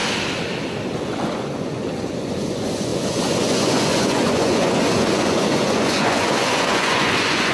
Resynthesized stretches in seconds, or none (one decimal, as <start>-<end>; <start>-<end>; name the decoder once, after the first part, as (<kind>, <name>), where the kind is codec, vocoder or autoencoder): 1.0-7.5 (vocoder, Vocos)